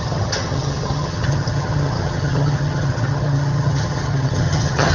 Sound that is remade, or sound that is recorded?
remade